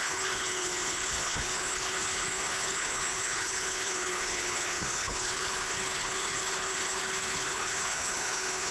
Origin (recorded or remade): remade